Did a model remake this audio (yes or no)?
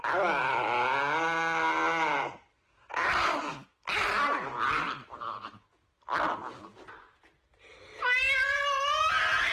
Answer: no